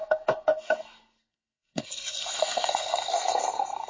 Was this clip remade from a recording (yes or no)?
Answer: yes